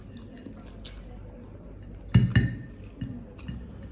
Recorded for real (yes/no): yes